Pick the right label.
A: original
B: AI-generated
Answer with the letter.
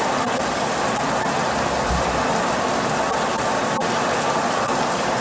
A